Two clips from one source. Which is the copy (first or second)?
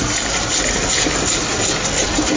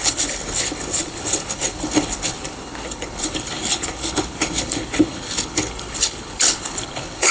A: second